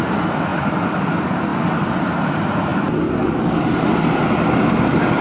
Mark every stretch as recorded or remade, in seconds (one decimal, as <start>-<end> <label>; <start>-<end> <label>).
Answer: 0.0-5.2 recorded